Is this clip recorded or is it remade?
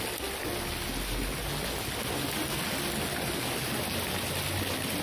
recorded